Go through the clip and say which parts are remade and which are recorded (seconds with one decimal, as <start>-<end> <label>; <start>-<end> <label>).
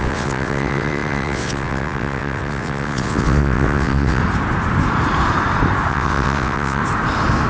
0.0-4.2 remade; 4.2-5.9 recorded; 5.9-6.8 remade; 6.8-7.5 recorded